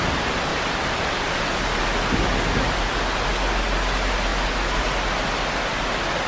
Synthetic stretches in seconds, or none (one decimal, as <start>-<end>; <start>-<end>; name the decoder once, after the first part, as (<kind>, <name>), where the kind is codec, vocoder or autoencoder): 0.5-1.9 (vocoder, BigVGAN v2)